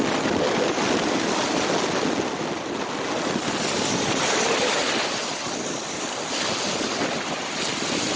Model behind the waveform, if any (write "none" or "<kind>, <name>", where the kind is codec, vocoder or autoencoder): none